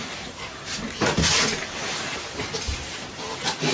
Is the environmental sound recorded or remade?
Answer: remade